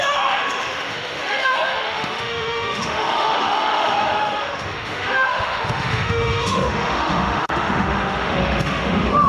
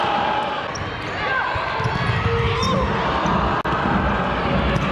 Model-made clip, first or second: first